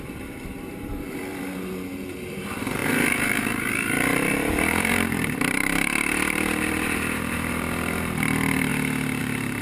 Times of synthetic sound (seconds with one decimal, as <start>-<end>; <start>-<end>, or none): 0.0-1.3; 2.1-8.7; 9.2-9.6